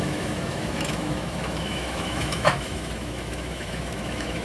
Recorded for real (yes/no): no